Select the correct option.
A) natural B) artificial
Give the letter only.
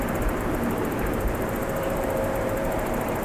B